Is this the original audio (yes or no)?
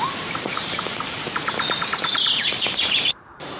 no